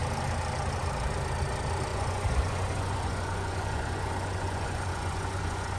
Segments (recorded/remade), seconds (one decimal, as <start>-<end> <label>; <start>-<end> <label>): 0.0-1.9 recorded; 1.9-5.8 remade